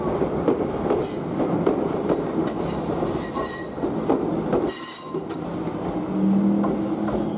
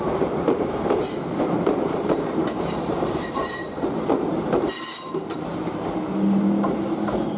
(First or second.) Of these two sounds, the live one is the first